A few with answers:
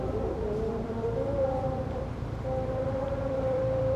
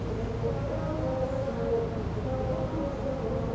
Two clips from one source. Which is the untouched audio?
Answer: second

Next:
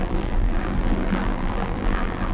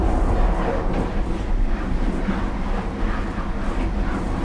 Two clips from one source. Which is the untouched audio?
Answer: second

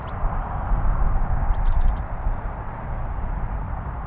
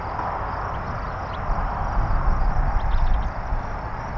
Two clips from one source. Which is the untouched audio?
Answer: second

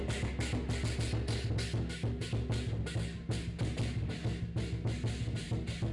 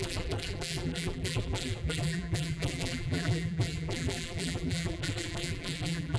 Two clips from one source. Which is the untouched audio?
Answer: first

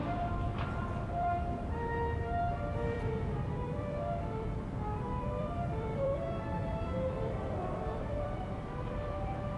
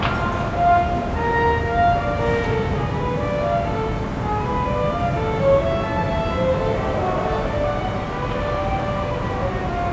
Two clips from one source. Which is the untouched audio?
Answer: second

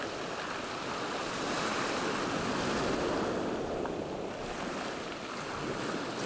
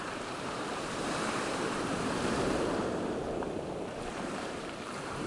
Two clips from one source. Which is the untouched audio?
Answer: first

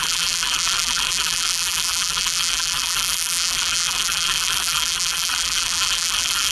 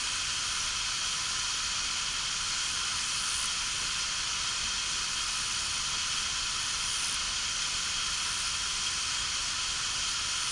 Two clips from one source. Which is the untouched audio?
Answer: second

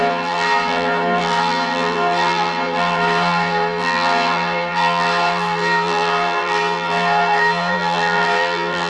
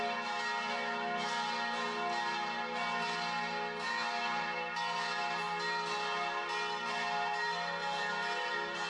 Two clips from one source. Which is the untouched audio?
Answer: second